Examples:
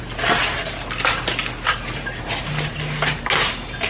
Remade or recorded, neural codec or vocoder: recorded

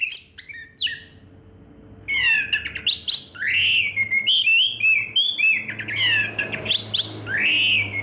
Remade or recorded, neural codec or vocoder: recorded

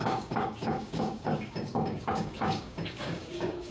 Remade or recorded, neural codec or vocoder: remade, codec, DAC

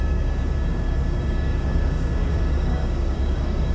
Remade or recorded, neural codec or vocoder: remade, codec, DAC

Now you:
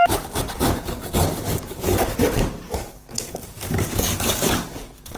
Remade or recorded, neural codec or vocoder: remade, codec, DAC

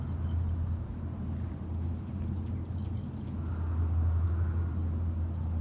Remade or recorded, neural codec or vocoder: recorded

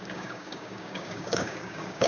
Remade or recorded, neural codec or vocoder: remade, codec, DAC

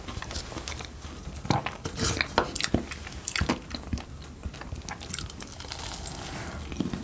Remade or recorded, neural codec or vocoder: recorded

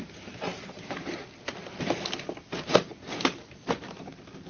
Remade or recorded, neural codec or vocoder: recorded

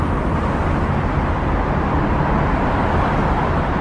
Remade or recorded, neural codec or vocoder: recorded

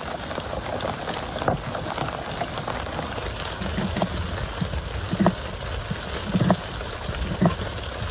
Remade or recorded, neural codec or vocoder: recorded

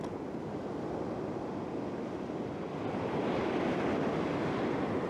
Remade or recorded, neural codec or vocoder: recorded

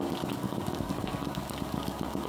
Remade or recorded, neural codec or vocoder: remade, codec, DAC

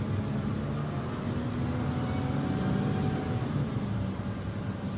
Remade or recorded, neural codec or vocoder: recorded